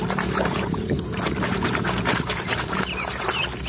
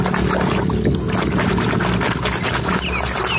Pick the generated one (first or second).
first